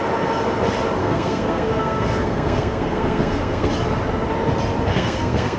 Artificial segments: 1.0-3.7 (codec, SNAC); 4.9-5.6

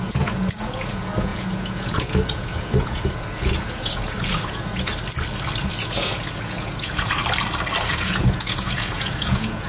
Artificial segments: 0.0-4.9 (vocoder, Vocos); 5.6-7.2; 7.9-9.7

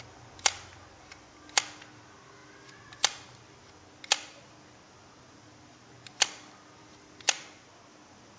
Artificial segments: none

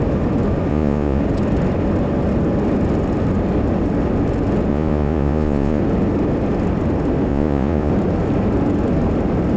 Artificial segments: 0.7-1.2 (vocoder, Vocos); 4.7-5.8; 7.3-7.9

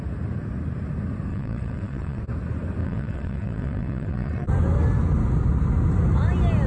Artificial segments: 1.3-2.2 (vocoder, WaveNeXt); 2.8-4.5

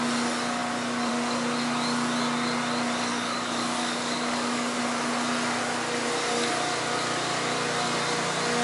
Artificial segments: 3.1-4.8 (codec, DAC)

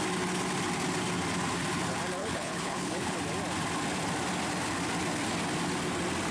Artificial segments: 2.2-3.2 (codec, HILCodec)